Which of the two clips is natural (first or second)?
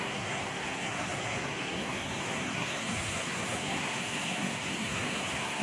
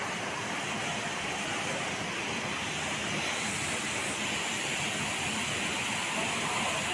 second